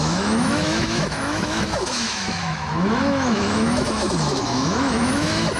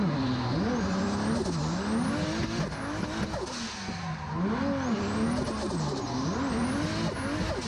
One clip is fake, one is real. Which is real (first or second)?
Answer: second